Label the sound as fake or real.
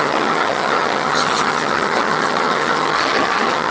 fake